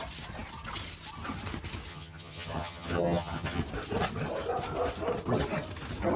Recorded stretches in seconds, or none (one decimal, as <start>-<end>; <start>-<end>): 0.0-1.9; 3.6-6.2